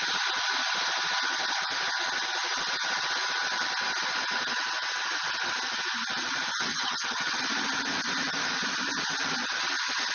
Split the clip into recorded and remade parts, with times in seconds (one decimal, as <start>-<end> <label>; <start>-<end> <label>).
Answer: 0.0-6.7 recorded; 6.7-7.4 remade; 7.4-10.1 recorded